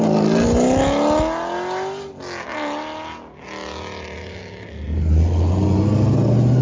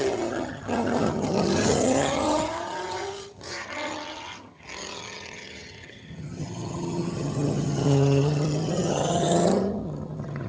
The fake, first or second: second